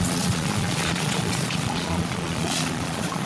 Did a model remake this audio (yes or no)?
yes